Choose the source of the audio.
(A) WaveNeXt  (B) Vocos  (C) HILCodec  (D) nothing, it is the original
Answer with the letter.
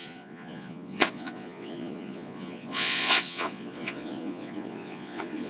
B